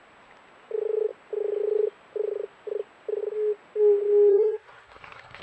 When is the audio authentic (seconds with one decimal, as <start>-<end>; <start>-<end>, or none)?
0.0-4.3